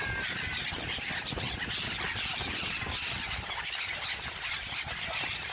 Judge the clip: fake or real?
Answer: real